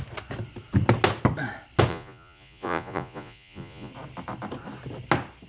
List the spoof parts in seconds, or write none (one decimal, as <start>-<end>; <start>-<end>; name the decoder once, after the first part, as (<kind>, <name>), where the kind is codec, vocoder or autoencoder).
1.9-3.9 (vocoder, Vocos)